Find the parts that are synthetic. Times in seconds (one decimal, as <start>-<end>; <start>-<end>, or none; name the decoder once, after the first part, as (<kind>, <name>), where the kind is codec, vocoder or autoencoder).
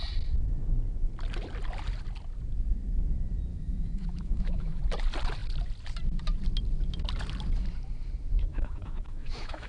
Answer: 3.5-4.8 (autoencoder, DAC-VAE); 8.5-9.7